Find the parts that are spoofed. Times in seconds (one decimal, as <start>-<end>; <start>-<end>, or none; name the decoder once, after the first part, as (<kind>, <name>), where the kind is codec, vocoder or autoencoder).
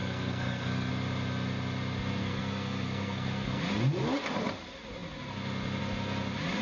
0.0-0.9 (codec, SNAC); 2.2-3.6